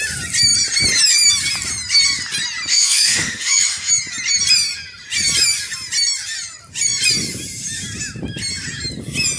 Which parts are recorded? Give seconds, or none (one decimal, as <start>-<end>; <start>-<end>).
0.0-2.7; 3.9-9.4